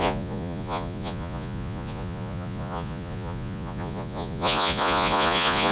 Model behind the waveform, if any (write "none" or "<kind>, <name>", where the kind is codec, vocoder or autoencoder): vocoder, Vocos